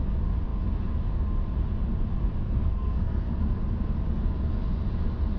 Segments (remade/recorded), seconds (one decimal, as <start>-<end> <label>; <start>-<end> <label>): 0.0-2.4 recorded; 2.4-3.4 remade; 3.4-5.4 recorded